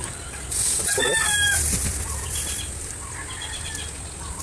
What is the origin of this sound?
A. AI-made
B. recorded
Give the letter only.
B